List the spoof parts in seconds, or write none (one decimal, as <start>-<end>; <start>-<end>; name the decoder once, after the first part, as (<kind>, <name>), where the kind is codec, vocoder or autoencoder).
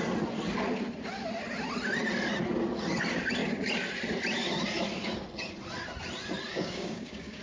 6.5-7.4 (codec, DAC)